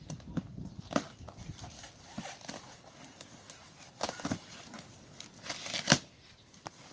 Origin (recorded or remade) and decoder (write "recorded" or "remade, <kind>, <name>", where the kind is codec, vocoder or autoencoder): recorded